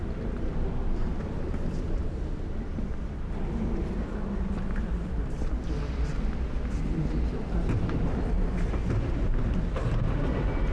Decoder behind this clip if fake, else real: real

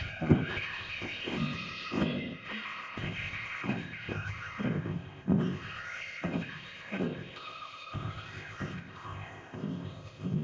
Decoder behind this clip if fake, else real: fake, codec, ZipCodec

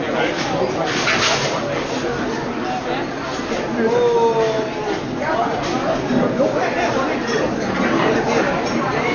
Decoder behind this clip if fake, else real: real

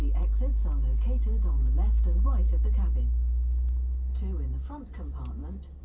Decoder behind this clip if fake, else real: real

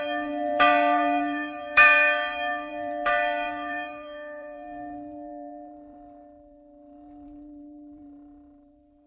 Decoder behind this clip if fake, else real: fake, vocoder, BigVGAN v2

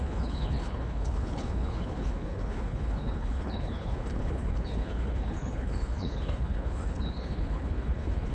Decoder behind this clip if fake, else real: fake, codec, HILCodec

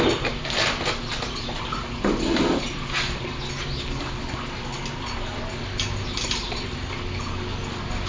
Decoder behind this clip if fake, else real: real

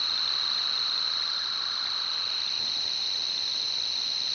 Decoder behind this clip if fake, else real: fake, vocoder, BigVGAN v2